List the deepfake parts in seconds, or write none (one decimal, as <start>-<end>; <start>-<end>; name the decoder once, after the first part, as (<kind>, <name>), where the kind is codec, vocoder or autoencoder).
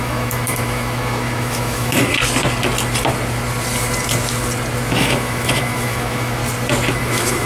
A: 0.0-2.1 (autoencoder, DAC-VAE); 5.0-6.4; 6.9-7.5